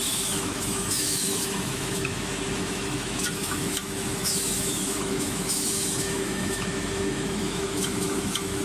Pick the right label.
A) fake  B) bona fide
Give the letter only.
A